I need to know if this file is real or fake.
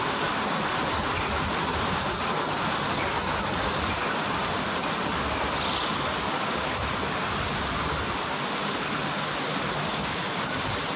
real